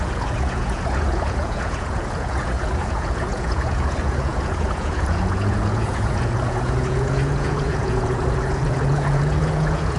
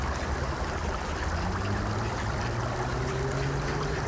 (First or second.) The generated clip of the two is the first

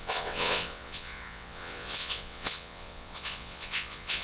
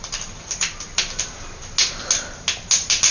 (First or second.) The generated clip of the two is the first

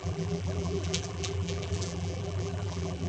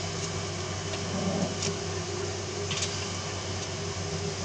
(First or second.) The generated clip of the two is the first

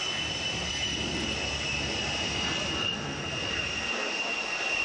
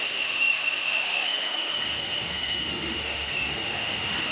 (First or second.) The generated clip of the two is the second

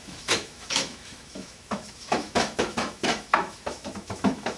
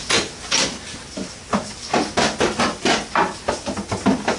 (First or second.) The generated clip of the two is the first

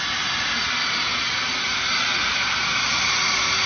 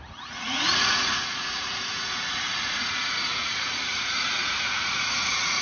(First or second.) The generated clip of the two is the second